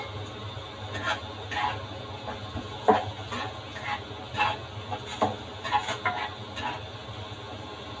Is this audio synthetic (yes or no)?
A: no